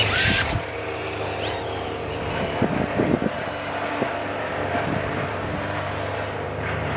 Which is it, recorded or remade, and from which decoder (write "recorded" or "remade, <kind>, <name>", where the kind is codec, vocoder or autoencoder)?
remade, vocoder, BigVGAN v2